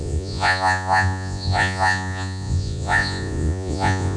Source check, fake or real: fake